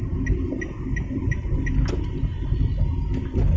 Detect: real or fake real